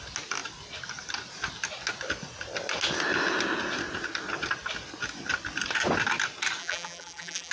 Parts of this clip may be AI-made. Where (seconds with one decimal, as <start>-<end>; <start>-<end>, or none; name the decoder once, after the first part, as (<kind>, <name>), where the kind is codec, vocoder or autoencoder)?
6.6-7.5 (vocoder, BigVGAN v2)